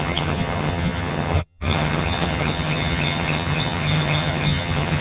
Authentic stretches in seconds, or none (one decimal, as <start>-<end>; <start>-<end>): none